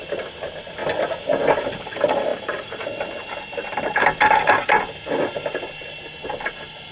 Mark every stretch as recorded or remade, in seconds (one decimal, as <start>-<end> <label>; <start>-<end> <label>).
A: 0.0-0.8 remade; 0.8-1.6 recorded; 1.6-6.9 remade